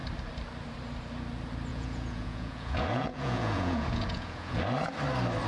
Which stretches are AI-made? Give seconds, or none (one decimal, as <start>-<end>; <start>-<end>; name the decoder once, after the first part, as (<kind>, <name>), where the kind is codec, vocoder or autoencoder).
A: 1.7-4.6 (vocoder, Vocos)